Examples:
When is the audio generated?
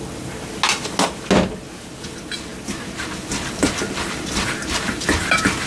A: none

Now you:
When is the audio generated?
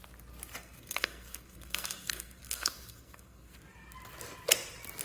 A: 0.6-3.6 (codec, SNAC)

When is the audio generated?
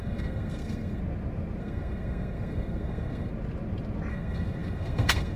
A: 0.0-1.0 (codec, SNAC); 1.6-3.3; 4.1-5.4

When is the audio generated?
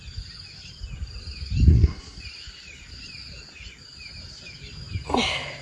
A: 1.7-2.2 (codec, SNAC)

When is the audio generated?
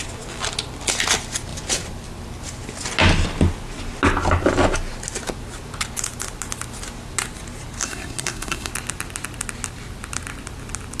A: 7.8-8.7 (codec, SNAC)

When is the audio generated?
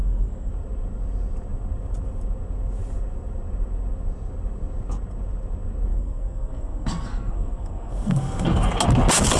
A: 0.0-0.5 (codec, SNAC); 5.9-8.7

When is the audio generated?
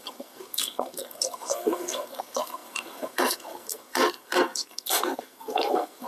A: 0.0-6.1 (codec, SNAC)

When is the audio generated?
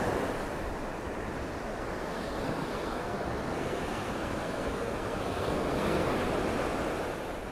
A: 1.7-6.2 (codec, SNAC)